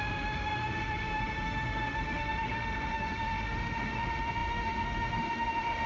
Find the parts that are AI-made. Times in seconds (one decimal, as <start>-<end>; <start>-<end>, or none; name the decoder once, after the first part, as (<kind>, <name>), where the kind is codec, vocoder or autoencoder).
0.0-5.9 (autoencoder, DAC-VAE)